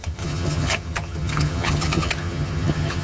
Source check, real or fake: fake